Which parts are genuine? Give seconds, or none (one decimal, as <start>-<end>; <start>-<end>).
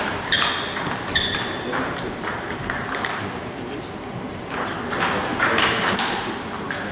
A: 0.0-1.1; 3.8-5.3; 6.0-6.9